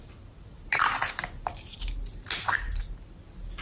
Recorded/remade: recorded